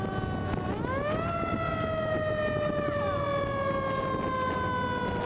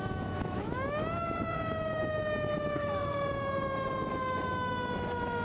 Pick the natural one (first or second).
first